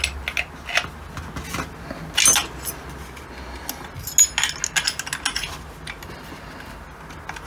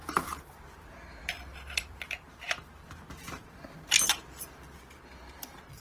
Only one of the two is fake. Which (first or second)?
second